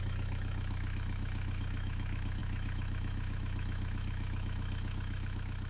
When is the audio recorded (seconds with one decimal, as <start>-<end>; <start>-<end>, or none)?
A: none